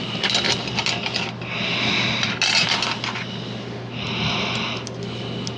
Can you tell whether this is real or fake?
real